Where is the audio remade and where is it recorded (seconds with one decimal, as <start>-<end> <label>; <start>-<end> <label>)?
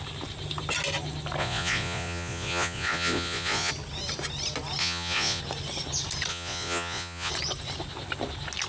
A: 0.0-1.4 recorded; 1.4-3.7 remade; 3.7-4.8 recorded; 4.8-5.4 remade; 5.4-6.3 recorded; 6.3-7.3 remade; 7.3-8.7 recorded